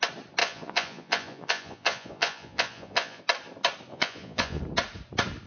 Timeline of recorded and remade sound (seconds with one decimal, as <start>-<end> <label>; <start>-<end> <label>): 0.0-0.4 recorded; 0.4-3.2 remade; 3.2-3.9 recorded; 3.9-4.6 remade; 4.6-5.5 recorded

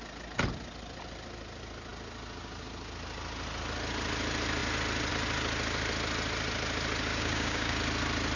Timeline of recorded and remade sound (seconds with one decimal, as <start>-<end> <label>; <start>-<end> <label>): 0.0-7.1 recorded; 7.1-7.7 remade; 7.7-8.4 recorded